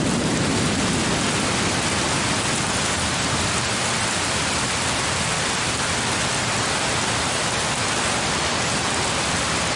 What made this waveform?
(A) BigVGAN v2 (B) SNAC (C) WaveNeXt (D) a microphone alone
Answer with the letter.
D